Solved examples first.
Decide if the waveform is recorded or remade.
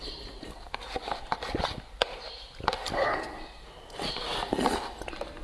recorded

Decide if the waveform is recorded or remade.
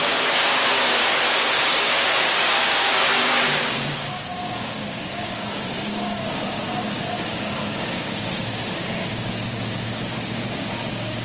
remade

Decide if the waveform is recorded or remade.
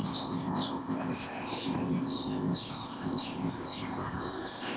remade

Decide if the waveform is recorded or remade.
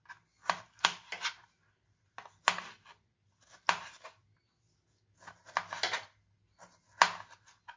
recorded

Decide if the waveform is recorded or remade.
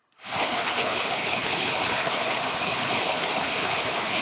remade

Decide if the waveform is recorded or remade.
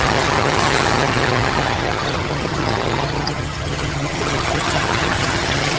remade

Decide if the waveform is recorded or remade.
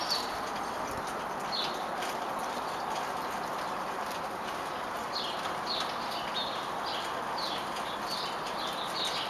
recorded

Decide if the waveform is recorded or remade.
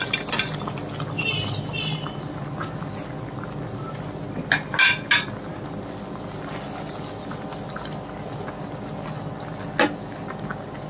recorded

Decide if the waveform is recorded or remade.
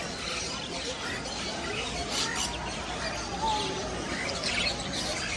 recorded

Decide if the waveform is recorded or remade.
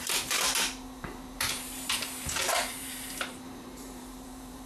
remade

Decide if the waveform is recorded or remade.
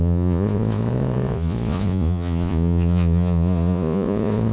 remade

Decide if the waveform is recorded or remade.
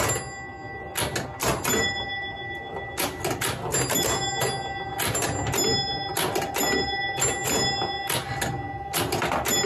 recorded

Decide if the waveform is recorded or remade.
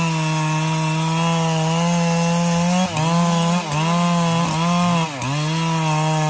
recorded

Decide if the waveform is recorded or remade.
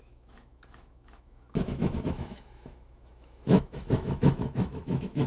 remade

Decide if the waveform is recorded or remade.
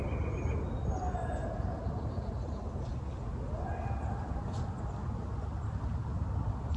recorded